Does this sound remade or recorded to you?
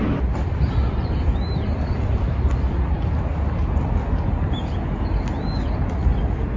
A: recorded